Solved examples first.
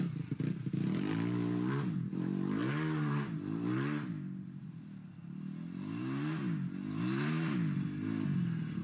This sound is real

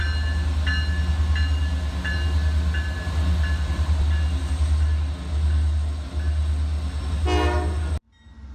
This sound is real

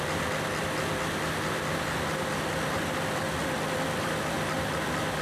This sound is real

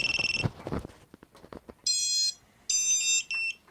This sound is real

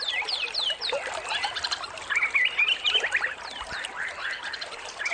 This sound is real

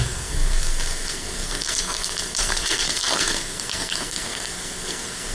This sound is fake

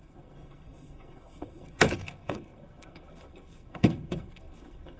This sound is fake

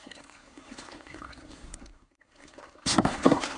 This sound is fake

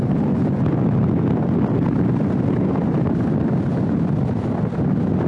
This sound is real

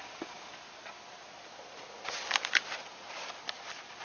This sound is real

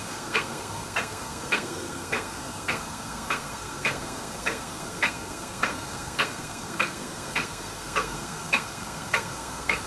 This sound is fake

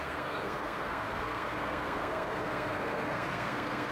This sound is fake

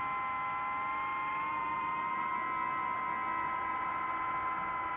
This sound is real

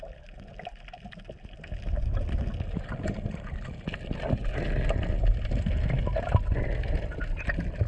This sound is real